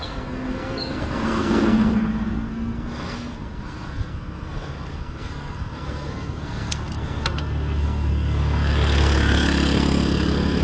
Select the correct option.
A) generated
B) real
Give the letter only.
A